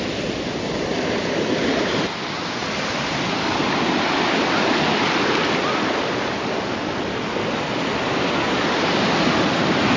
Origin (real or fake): real